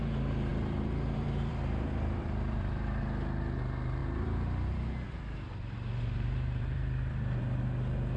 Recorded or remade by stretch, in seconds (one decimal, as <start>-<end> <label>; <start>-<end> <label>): 0.0-0.5 recorded; 0.5-3.0 remade; 3.0-4.0 recorded; 4.0-7.4 remade; 7.4-8.2 recorded